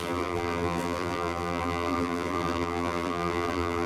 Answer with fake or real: fake